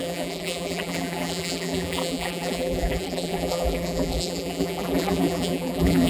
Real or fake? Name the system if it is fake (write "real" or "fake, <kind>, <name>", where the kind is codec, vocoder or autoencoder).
fake, vocoder, BigVGAN v2